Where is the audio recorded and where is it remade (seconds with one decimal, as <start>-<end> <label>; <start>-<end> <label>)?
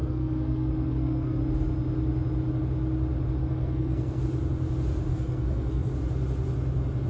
0.0-1.4 remade; 1.4-3.4 recorded; 3.4-4.2 remade; 4.2-5.1 recorded; 5.1-5.9 remade; 5.9-7.1 recorded